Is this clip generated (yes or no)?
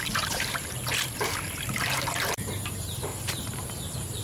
yes